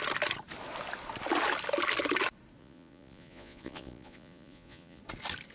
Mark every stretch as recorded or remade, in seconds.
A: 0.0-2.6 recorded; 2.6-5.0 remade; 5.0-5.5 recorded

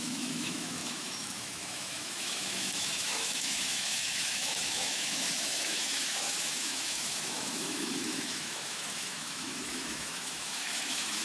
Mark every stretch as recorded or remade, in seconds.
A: 0.0-11.2 remade

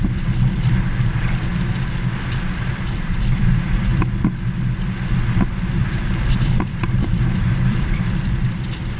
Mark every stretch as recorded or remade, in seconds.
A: 0.0-1.5 remade; 1.5-2.7 recorded; 2.7-3.9 remade; 3.9-5.7 recorded; 5.7-9.0 remade

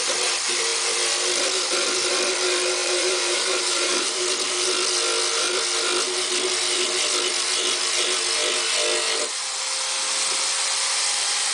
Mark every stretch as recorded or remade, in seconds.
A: 0.0-2.8 recorded; 2.8-4.2 remade; 4.2-11.5 recorded

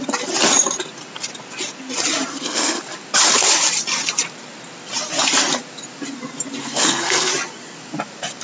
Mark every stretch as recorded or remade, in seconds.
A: 0.0-2.3 recorded; 2.3-2.8 remade; 2.8-6.6 recorded; 6.6-7.3 remade; 7.3-8.4 recorded

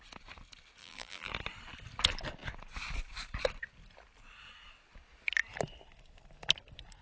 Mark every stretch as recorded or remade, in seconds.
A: 0.0-0.8 recorded; 0.8-1.3 remade; 1.3-7.0 recorded

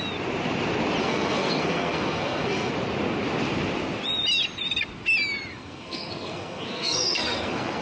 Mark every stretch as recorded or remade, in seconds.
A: 0.0-1.0 recorded; 1.0-2.7 remade; 2.7-5.5 recorded; 5.5-7.8 remade